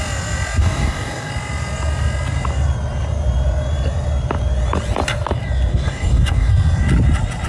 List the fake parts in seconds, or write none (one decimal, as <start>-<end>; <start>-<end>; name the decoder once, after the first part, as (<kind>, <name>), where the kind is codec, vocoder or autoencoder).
0.6-1.3 (codec, DAC); 5.7-6.5